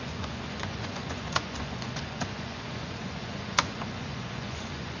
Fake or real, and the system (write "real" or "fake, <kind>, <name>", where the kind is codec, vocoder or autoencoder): fake, vocoder, Vocos